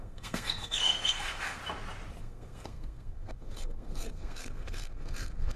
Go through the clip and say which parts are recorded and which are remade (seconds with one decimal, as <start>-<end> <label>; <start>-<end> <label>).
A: 0.0-1.6 remade; 1.6-2.2 recorded; 2.2-5.6 remade